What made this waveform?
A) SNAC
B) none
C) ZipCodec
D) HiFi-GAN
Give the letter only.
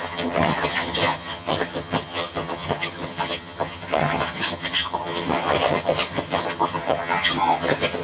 D